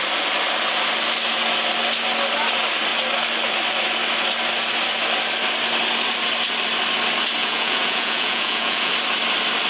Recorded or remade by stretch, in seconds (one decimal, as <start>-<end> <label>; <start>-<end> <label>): 0.0-7.4 recorded; 7.4-8.9 remade; 8.9-9.7 recorded

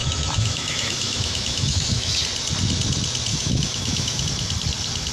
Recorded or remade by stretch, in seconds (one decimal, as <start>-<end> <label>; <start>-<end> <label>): 0.0-2.2 remade; 2.2-3.3 recorded; 3.3-4.2 remade; 4.2-5.1 recorded

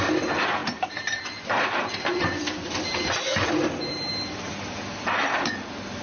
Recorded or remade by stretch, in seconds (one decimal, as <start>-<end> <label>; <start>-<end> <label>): 0.0-0.6 recorded; 0.6-4.1 remade; 4.1-6.0 recorded

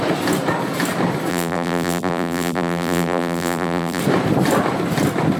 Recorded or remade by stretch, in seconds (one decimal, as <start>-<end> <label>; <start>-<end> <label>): 0.0-1.3 recorded; 1.3-4.0 remade; 4.0-5.4 recorded

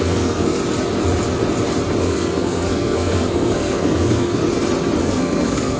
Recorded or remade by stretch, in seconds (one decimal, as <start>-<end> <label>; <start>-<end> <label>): 0.0-0.6 remade; 0.6-2.0 recorded; 2.0-4.4 remade; 4.4-5.0 recorded; 5.0-5.8 remade

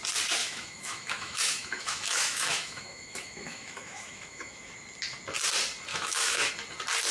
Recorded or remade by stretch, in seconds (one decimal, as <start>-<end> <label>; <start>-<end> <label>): 0.0-0.4 recorded; 0.4-4.7 remade; 4.7-5.9 recorded; 5.9-6.5 remade; 6.5-7.1 recorded